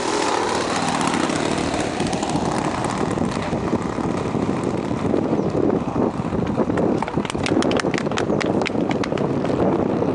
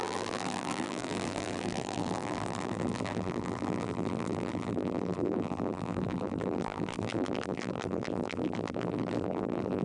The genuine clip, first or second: first